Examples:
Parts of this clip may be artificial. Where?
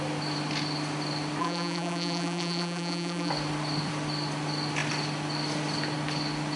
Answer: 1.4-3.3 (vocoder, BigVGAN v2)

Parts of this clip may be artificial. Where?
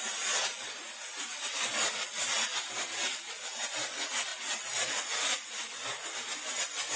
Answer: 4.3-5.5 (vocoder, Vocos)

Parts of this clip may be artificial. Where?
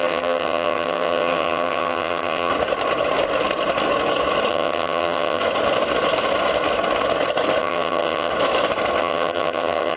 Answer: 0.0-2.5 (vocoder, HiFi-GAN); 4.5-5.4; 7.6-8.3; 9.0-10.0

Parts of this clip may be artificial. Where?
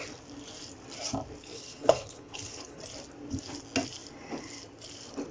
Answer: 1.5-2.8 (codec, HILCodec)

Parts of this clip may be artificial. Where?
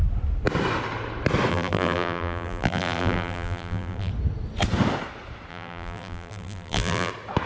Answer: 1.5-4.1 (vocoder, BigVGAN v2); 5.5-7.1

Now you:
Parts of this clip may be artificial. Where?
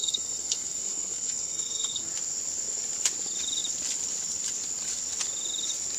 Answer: 0.0-2.1 (codec, SNAC)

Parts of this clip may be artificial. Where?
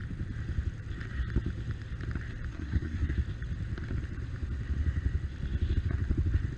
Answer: 2.5-3.1 (codec, SNAC)